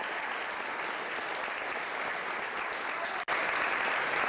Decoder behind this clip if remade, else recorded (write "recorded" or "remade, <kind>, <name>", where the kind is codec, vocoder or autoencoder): recorded